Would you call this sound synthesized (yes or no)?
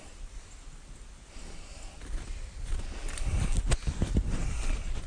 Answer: no